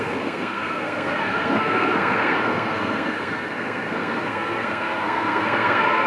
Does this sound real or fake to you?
fake